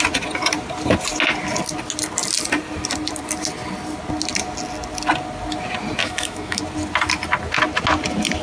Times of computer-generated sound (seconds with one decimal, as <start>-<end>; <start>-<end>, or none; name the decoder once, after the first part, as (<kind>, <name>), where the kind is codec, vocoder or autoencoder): 6.0-6.6 (autoencoder, DAC-VAE)